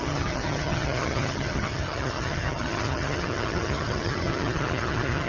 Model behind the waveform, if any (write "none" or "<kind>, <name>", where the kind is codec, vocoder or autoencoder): vocoder, HiFi-GAN